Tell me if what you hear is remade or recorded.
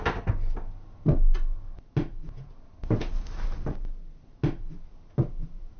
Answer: recorded